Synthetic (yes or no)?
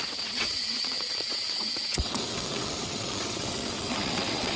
yes